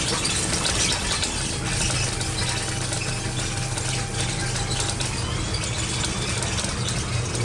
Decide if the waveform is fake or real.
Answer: real